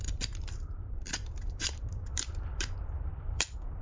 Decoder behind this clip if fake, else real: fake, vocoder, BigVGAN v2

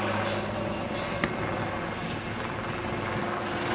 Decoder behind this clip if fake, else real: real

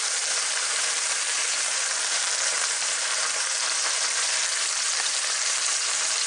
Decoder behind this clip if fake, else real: fake, vocoder, BigVGAN v2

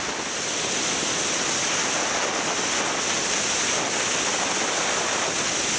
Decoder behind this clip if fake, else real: real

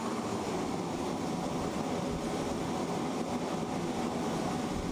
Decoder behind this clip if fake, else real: fake, vocoder, BigVGAN v2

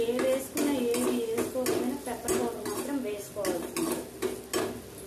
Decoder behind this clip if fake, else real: real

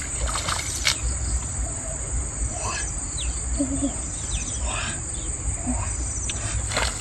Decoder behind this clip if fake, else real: real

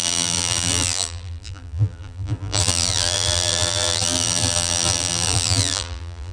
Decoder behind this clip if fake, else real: fake, vocoder, BigVGAN v2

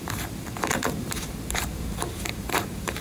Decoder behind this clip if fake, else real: fake, vocoder, BigVGAN v2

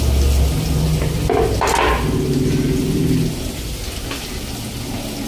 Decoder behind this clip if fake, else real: real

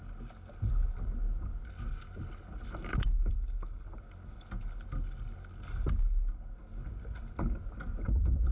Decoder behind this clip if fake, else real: real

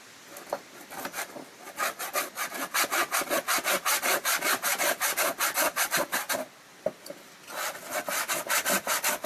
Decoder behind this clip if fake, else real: real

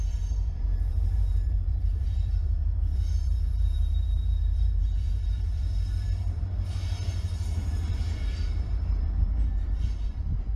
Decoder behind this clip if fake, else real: fake, vocoder, BigVGAN v2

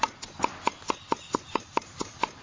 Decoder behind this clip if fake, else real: fake, vocoder, BigVGAN v2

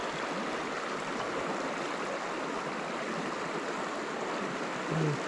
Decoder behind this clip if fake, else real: real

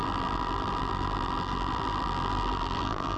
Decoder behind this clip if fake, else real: fake, vocoder, BigVGAN v2